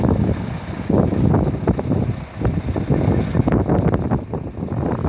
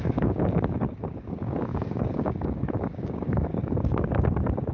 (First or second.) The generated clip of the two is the second